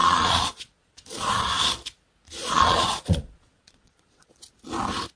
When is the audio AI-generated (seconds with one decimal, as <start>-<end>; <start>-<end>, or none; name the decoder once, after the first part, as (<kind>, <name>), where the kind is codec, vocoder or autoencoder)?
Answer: 0.0-1.3 (vocoder, Vocos); 2.4-4.4

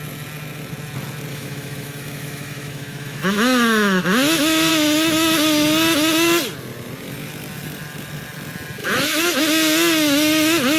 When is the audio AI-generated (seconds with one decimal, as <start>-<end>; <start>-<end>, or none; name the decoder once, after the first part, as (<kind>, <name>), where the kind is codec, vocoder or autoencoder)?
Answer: 1.3-4.7 (autoencoder, DAC-VAE); 8.8-9.4

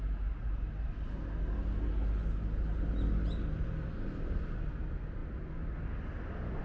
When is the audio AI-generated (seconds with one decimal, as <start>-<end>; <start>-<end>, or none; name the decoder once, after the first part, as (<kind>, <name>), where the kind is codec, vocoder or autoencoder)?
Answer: none

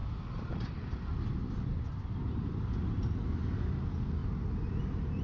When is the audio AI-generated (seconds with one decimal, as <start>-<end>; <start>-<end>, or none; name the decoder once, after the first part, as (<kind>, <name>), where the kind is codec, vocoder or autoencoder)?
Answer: none